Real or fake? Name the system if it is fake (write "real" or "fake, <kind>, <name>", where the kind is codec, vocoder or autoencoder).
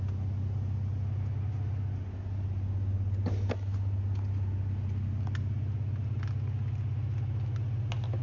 real